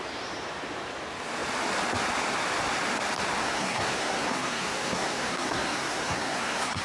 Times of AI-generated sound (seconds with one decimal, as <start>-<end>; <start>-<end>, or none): 3.4-6.8